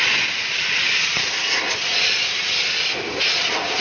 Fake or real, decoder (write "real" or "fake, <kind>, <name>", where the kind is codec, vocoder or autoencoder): real